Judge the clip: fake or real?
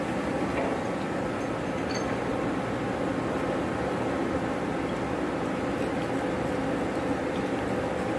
real